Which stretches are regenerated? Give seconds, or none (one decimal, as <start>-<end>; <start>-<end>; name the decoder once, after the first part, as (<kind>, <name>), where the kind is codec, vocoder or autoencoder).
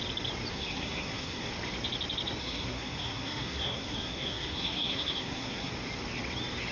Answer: 0.5-1.5 (codec, SNAC); 2.4-5.7